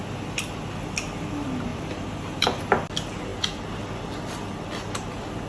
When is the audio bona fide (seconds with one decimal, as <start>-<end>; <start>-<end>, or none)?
0.0-1.7; 2.6-5.5